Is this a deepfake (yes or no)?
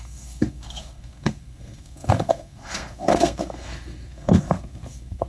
yes